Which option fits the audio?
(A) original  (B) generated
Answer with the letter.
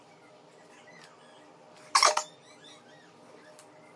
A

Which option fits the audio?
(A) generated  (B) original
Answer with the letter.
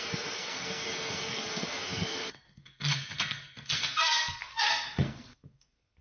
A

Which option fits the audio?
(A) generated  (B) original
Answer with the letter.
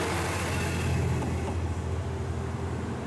B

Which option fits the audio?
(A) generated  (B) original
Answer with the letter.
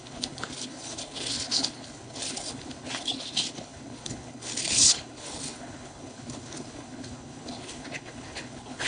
A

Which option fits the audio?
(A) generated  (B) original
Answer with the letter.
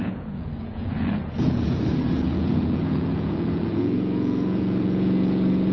A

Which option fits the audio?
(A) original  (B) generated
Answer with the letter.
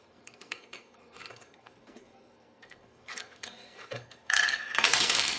B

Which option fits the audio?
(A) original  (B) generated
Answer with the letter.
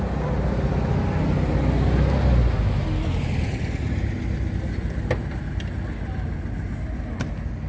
A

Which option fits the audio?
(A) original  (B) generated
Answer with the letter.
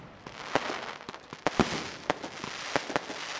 A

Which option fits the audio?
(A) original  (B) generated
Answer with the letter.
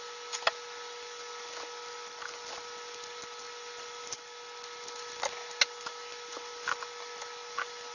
A